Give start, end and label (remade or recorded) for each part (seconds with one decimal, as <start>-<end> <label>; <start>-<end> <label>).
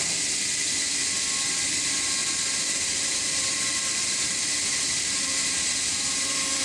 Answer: 0.0-2.2 recorded; 2.2-6.6 remade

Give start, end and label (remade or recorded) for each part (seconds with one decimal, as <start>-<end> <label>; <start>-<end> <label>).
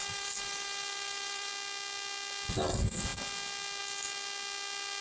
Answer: 0.0-1.5 remade; 1.5-5.0 recorded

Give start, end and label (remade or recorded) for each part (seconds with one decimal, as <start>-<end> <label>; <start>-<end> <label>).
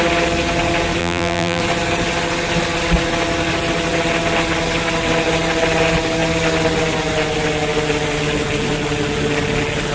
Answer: 0.0-1.0 recorded; 1.0-1.6 remade; 1.6-9.9 recorded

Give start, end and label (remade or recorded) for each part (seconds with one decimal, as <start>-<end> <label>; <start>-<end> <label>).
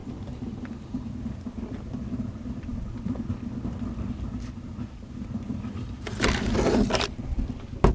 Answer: 0.0-7.9 remade